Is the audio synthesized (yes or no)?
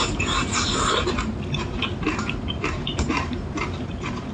yes